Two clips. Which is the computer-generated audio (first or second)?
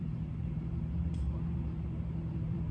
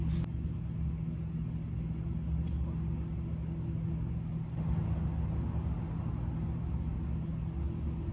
first